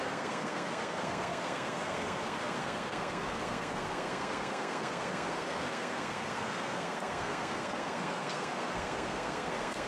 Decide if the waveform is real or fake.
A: fake